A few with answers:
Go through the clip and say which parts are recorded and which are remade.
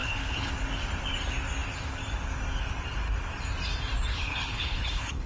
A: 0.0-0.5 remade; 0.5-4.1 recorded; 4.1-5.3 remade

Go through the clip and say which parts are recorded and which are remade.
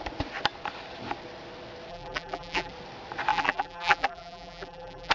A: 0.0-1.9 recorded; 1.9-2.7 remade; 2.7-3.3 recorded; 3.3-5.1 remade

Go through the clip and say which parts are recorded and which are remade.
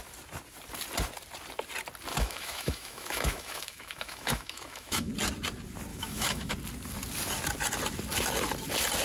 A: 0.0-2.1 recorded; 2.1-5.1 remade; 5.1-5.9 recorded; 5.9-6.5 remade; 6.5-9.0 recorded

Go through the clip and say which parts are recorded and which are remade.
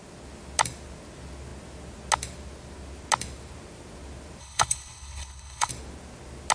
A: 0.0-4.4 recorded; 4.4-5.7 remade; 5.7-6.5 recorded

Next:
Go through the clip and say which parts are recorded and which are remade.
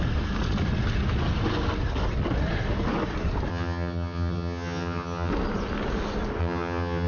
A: 0.0-3.5 recorded; 3.5-5.3 remade; 5.3-6.4 recorded; 6.4-7.1 remade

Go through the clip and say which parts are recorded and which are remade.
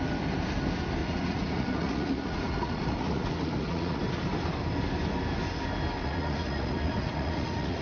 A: 0.0-1.0 recorded; 1.0-4.0 remade; 4.0-6.0 recorded; 6.0-7.8 remade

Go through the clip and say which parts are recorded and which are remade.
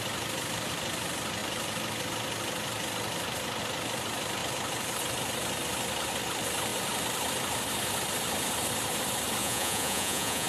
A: 0.0-9.4 recorded; 9.4-10.5 remade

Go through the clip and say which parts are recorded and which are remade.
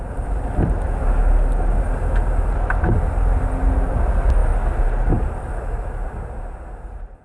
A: 0.0-7.2 recorded